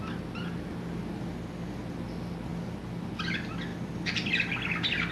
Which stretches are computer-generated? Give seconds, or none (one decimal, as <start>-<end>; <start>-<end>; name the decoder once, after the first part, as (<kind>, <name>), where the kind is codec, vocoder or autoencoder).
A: none